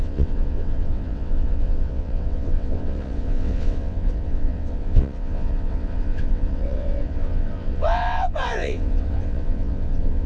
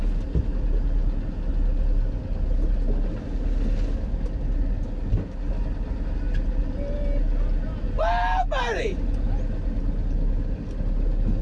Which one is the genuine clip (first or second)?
second